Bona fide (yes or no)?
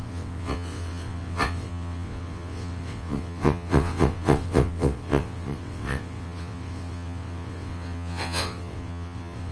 no